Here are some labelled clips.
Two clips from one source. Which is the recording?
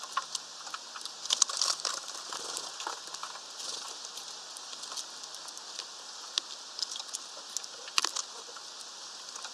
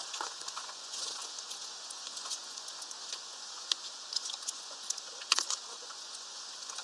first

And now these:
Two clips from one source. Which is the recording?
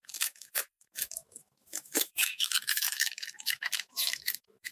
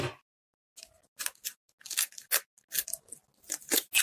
second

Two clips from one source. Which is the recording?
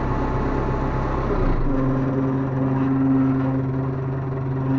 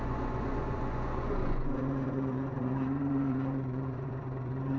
first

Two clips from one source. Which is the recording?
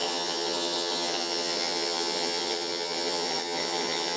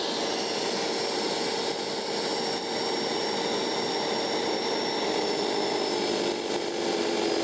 second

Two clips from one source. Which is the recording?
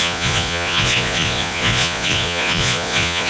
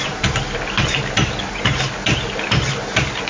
second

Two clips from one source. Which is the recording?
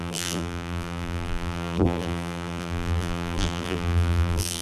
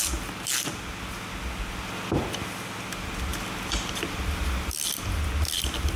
second